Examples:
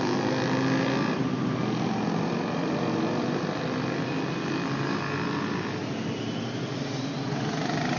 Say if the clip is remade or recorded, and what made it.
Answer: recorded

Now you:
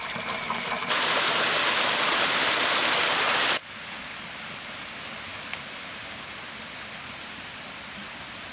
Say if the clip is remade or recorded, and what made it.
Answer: recorded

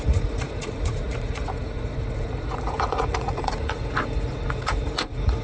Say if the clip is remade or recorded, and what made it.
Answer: remade, vocoder, Vocos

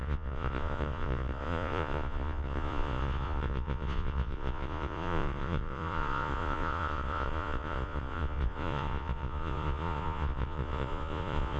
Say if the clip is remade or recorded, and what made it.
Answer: remade, vocoder, Vocos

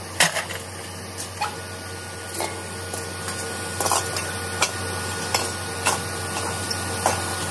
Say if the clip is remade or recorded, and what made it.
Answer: recorded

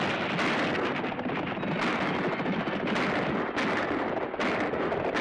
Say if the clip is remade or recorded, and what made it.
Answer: recorded